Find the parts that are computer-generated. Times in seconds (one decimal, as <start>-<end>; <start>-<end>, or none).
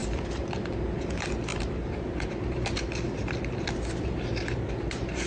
0.0-0.6; 1.5-4.7